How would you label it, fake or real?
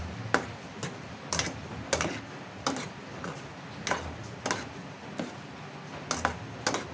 real